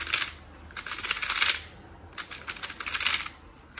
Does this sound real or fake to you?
real